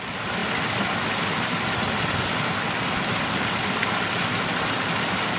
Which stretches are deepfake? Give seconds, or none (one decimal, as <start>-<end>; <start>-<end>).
none